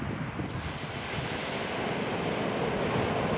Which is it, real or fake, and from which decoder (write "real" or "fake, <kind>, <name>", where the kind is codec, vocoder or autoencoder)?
real